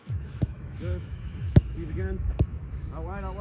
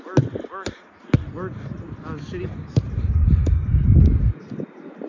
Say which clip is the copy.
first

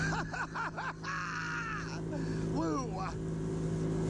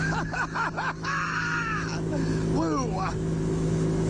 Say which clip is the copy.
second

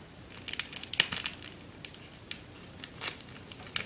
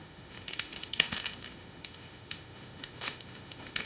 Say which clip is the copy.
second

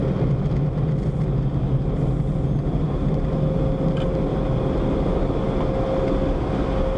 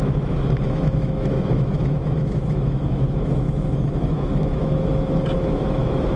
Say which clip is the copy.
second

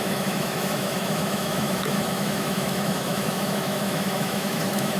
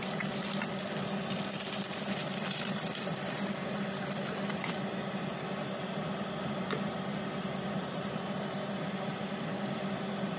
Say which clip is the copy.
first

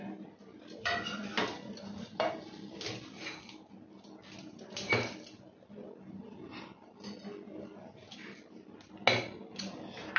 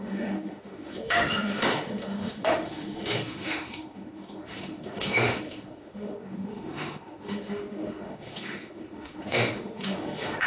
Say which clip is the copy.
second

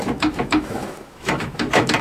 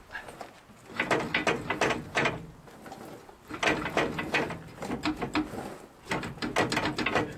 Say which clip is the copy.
first